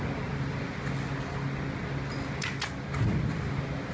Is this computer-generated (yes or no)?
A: no